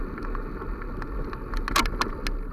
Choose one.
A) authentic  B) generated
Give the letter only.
A